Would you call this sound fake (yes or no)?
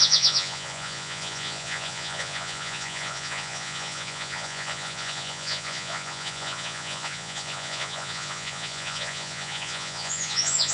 yes